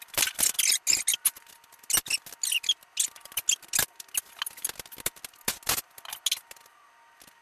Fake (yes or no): no